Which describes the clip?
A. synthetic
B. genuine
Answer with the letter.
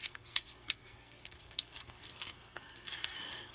A